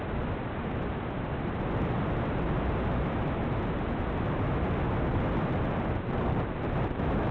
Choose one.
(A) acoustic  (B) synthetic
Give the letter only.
A